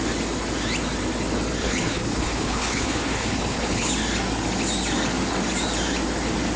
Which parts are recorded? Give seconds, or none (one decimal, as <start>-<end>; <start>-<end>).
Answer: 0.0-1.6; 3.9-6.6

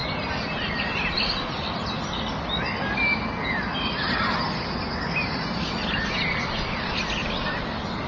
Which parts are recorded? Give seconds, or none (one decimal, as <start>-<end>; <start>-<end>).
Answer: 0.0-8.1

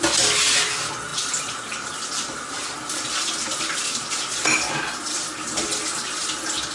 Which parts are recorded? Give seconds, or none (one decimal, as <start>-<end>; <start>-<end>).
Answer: 0.0-6.7